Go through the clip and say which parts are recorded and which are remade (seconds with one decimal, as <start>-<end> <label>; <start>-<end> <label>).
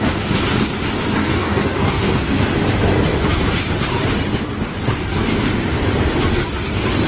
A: 0.0-1.2 recorded; 1.2-2.4 remade; 2.4-7.1 recorded